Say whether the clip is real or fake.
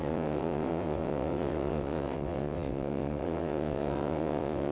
fake